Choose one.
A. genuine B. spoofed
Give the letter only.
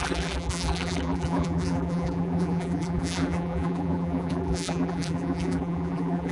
B